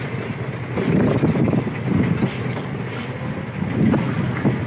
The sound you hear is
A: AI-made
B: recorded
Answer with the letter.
B